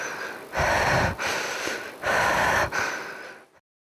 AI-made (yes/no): yes